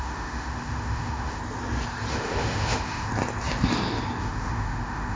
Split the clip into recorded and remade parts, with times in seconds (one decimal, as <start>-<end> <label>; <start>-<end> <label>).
0.0-1.4 remade; 1.4-2.1 recorded; 2.1-3.1 remade; 3.1-4.2 recorded; 4.2-5.2 remade